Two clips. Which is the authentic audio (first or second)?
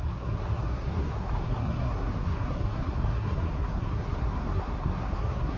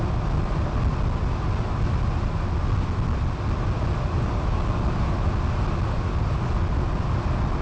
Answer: second